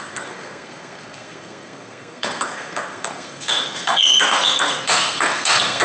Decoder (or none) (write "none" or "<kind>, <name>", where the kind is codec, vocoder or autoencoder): codec, SNAC